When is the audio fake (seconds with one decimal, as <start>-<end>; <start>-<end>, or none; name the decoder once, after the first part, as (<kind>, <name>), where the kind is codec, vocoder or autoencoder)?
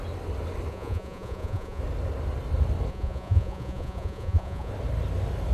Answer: 0.7-1.8 (vocoder, Vocos); 2.9-4.7